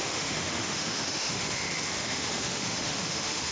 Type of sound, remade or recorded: remade